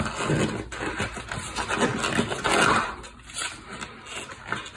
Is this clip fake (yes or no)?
no